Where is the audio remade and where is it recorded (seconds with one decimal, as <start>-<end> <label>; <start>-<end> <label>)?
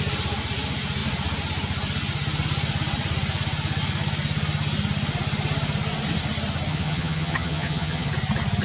0.0-6.7 recorded; 6.7-8.1 remade; 8.1-8.6 recorded